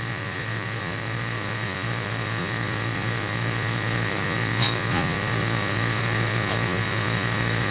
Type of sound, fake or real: fake